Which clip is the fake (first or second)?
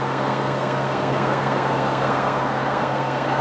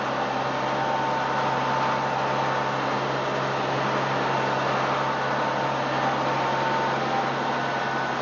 first